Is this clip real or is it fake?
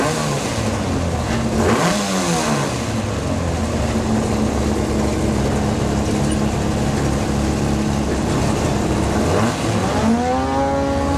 real